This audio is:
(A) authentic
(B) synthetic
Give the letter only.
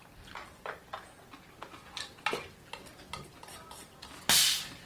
A